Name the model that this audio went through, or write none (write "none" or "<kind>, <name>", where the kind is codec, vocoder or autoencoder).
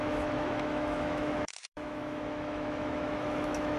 autoencoder, DAC-VAE